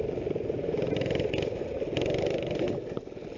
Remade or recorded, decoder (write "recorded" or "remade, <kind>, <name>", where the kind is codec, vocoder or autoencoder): recorded